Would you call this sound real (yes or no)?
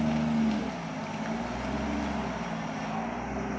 yes